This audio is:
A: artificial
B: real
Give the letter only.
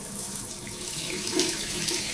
A